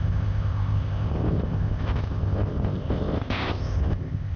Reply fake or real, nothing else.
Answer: fake